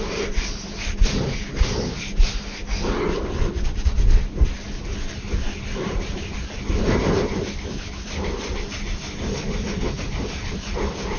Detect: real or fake real